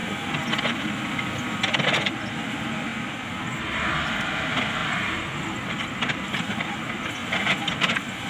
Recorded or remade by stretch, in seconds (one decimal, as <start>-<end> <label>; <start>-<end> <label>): 0.0-0.6 recorded; 0.6-2.9 remade; 2.9-3.6 recorded; 3.6-8.3 remade